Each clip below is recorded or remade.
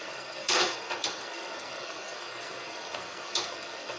remade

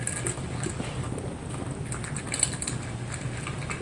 recorded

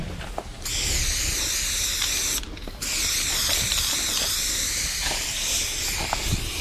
recorded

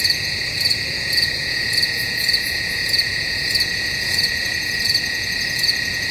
remade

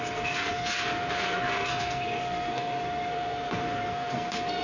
remade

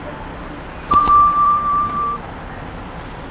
remade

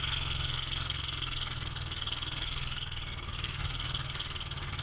remade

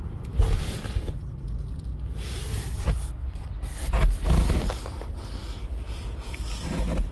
recorded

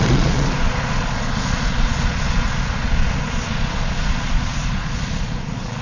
remade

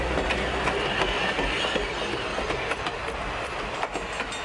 recorded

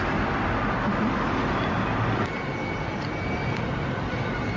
recorded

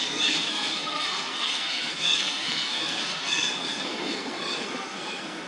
remade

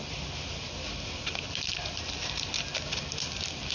recorded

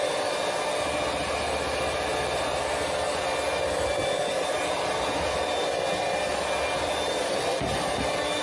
recorded